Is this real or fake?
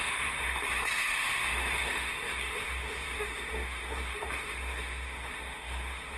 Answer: fake